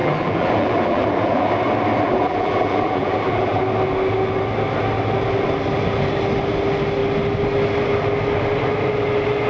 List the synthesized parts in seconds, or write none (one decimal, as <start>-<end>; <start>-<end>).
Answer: 0.0-1.5; 1.9-3.6